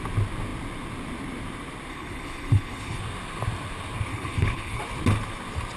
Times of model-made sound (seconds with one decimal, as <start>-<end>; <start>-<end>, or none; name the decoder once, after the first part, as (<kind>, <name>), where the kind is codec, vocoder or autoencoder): 1.9-3.0 (codec, HILCodec); 4.1-4.8